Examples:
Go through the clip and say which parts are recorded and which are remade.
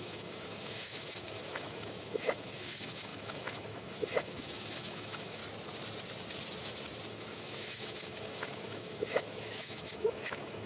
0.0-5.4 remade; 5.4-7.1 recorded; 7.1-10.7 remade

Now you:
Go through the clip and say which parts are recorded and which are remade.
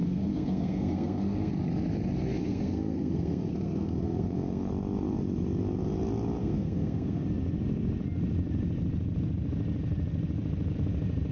0.0-1.5 remade; 1.5-2.4 recorded; 2.4-4.7 remade; 4.7-6.4 recorded; 6.4-7.2 remade; 7.2-11.3 recorded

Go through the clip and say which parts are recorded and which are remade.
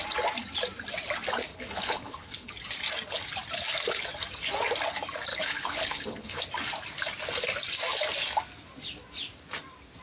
0.0-1.5 recorded; 1.5-2.5 remade; 2.5-5.3 recorded; 5.3-6.4 remade; 6.4-10.0 recorded